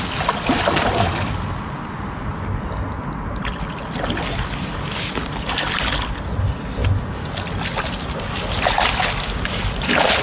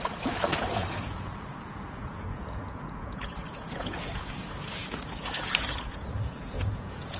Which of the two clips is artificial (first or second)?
second